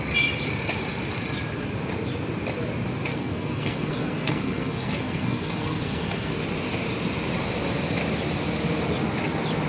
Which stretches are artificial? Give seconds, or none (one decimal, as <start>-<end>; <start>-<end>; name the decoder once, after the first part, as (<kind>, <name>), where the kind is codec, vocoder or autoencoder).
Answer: 3.1-6.3 (codec, SNAC)